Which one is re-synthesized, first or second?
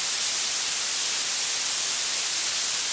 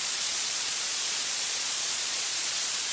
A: second